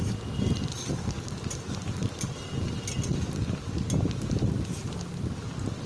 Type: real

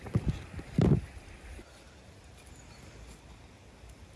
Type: real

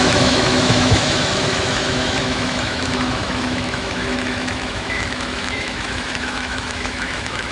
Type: fake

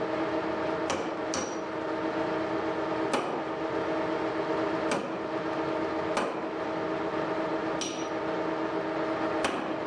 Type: real